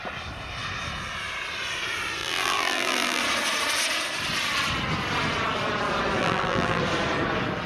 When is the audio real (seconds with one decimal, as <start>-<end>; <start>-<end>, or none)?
0.0-2.2; 3.2-6.2; 6.8-7.7